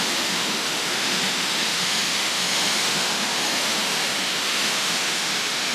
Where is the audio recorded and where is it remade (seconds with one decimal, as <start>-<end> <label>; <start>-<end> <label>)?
0.0-5.7 remade